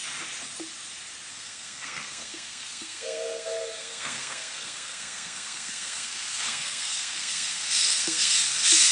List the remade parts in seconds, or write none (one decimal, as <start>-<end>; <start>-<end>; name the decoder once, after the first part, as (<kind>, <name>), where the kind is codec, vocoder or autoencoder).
1.3-8.9 (codec, SNAC)